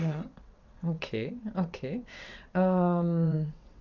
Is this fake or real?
fake